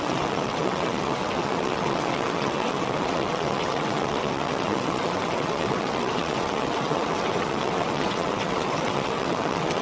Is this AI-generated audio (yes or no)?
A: yes